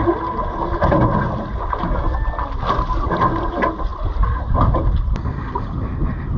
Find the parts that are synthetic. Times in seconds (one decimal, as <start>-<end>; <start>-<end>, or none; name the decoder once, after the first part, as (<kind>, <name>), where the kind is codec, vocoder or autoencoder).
none